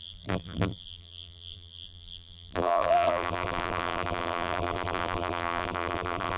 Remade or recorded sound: remade